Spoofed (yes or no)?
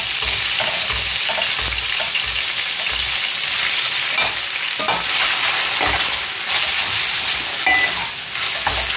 no